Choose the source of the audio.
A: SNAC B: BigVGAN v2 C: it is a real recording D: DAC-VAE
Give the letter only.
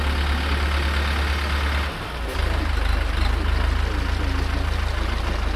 C